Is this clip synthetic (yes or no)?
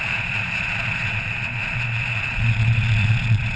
yes